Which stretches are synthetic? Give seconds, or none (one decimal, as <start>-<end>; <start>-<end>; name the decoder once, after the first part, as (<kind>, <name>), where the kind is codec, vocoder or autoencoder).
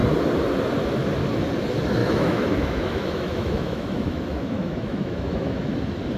2.0-5.7 (autoencoder, DAC-VAE)